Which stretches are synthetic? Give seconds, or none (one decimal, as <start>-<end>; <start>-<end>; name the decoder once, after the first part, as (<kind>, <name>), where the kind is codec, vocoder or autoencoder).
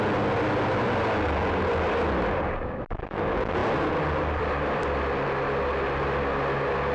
3.6-5.0 (vocoder, BigVGAN v2)